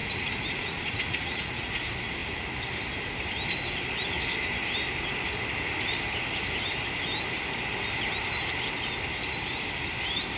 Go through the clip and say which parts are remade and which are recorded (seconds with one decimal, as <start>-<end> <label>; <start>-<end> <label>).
0.0-1.8 remade; 1.8-10.4 recorded